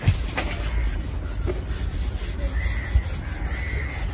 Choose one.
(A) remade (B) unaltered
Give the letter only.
B